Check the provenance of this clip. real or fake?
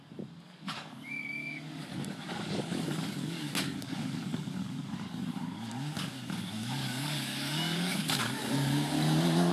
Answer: fake